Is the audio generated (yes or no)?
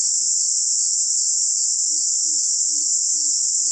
yes